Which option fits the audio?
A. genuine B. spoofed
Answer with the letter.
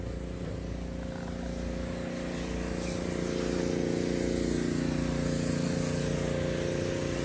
A